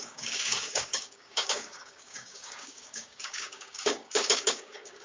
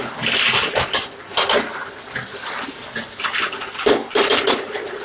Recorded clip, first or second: second